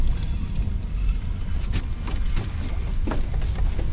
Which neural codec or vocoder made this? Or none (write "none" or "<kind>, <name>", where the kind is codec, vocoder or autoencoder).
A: none